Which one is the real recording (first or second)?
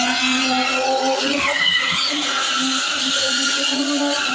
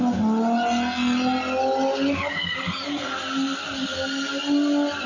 second